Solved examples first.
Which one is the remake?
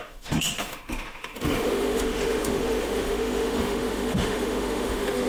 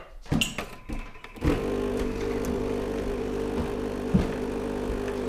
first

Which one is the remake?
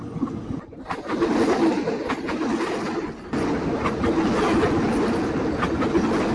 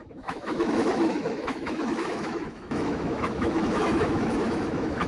second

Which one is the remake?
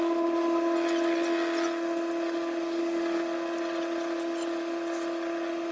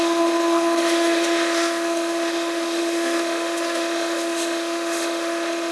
second